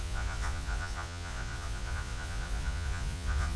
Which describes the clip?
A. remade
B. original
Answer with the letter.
A